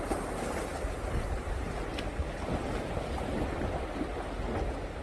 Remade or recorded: recorded